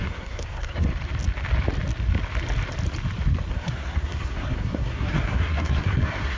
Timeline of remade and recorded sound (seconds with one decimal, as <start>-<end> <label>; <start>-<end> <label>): 0.0-0.9 remade; 0.9-3.5 recorded; 3.5-6.4 remade

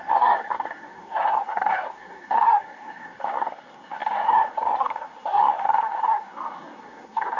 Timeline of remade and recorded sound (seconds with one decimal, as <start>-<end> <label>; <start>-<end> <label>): 0.0-7.4 remade

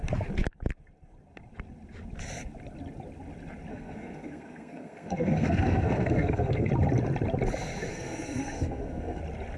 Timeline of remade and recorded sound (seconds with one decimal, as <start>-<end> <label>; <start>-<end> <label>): 0.0-3.7 recorded; 3.7-6.7 remade; 6.7-7.9 recorded; 7.9-9.2 remade; 9.2-9.6 recorded

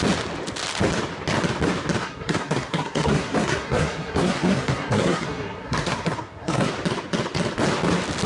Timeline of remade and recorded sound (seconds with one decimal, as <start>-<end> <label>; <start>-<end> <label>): 0.0-2.0 recorded; 2.0-6.7 remade; 6.7-8.3 recorded